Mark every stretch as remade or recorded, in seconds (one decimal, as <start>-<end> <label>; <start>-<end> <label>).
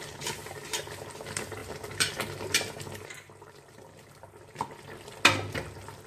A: 0.0-6.1 recorded